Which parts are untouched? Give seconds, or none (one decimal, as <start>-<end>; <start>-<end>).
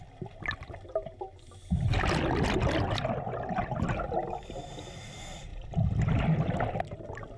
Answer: 0.0-7.4